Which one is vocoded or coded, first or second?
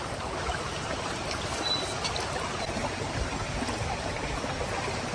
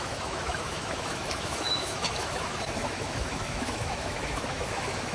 second